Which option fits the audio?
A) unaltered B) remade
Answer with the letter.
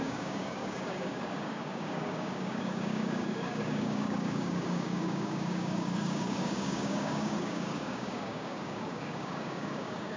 B